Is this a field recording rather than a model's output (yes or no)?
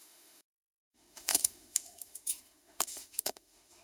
no